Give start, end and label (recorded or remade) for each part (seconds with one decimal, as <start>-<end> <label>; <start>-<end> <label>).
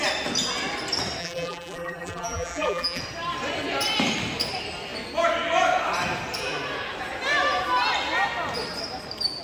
0.0-1.2 recorded; 1.2-3.0 remade; 3.0-9.4 recorded